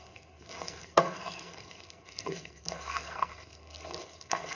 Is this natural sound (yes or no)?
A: no